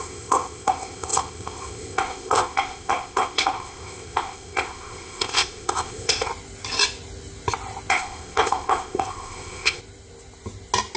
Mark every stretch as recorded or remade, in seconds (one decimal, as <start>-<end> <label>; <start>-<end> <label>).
0.0-6.3 remade; 6.3-7.9 recorded; 7.9-9.8 remade; 9.8-11.0 recorded